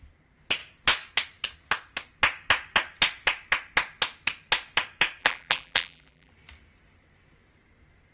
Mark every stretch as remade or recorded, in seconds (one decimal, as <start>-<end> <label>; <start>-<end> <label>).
0.0-5.2 recorded; 5.2-6.3 remade; 6.3-8.1 recorded